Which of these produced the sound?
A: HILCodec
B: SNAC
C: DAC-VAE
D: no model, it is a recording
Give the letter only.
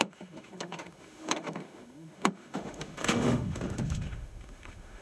C